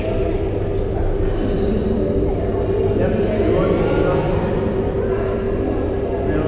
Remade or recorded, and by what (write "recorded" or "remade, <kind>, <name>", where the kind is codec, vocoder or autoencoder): recorded